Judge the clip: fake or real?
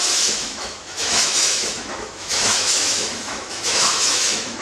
fake